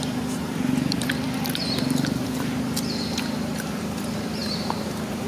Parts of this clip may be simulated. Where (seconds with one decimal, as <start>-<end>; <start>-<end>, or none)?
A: 0.0-5.3